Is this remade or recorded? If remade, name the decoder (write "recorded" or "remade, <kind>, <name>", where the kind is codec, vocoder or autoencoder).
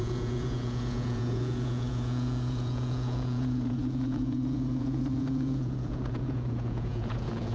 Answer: remade, vocoder, Vocos